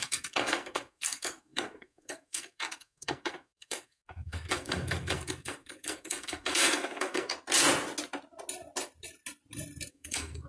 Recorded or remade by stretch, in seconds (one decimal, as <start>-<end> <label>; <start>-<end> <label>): 0.0-7.3 remade; 7.3-9.9 recorded; 9.9-10.5 remade